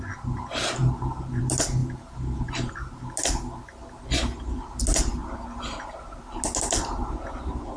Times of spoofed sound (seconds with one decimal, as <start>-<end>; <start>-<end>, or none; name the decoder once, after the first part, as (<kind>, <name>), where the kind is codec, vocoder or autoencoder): none